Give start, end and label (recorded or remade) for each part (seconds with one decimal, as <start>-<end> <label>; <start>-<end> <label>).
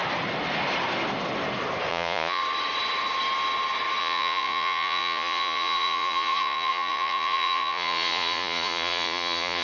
0.0-1.9 recorded; 1.9-2.4 remade; 2.4-4.0 recorded; 4.0-9.6 remade